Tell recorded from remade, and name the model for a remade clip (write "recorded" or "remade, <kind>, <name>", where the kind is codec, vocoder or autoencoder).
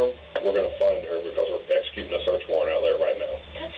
remade, vocoder, BigVGAN v2